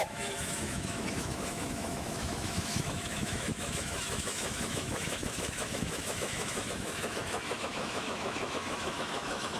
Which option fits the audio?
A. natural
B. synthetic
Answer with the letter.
B